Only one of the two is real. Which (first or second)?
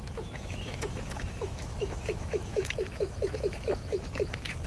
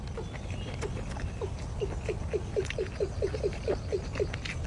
second